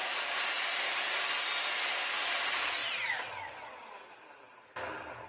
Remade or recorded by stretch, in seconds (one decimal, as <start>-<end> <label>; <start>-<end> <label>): 0.0-5.3 recorded